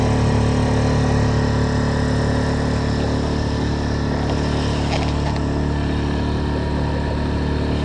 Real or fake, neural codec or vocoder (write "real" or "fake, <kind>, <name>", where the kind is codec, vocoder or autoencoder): real